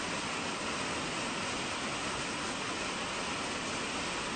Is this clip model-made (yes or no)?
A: no